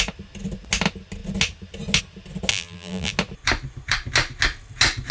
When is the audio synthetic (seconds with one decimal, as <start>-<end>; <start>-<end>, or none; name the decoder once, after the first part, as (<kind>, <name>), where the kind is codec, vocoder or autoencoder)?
2.5-3.1 (vocoder, BigVGAN v2)